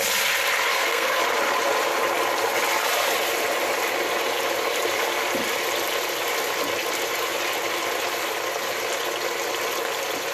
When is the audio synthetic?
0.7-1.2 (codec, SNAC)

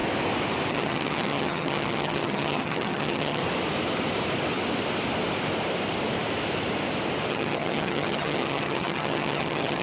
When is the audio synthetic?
0.7-3.4 (vocoder, HiFi-GAN); 7.3-9.8